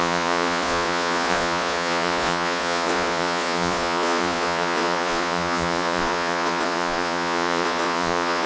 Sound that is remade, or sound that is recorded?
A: remade